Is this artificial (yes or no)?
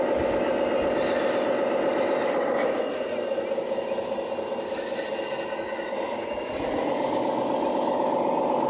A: no